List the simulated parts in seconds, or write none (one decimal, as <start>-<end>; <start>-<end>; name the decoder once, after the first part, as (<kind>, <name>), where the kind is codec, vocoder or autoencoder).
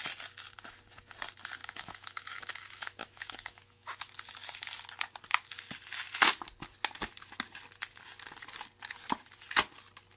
1.6-4.1 (autoencoder, DAC-VAE)